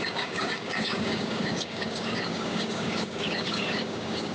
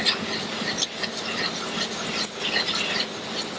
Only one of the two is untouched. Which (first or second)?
second